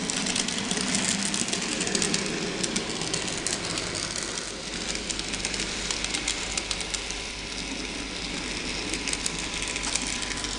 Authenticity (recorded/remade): recorded